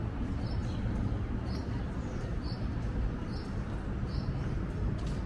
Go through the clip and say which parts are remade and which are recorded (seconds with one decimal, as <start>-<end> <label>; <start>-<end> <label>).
0.0-5.3 recorded